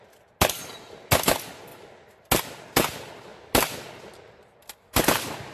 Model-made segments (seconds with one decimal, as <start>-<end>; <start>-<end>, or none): 3.3-4.1